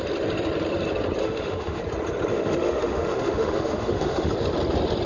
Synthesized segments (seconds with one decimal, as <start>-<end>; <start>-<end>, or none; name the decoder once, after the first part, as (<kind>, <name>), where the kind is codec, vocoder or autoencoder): 1.2-1.8 (autoencoder, DAC-VAE); 2.3-4.3